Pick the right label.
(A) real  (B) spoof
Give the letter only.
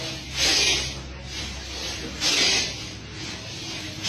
A